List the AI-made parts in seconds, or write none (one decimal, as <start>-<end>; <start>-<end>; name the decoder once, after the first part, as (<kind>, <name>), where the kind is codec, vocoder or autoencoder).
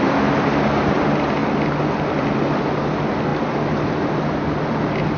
none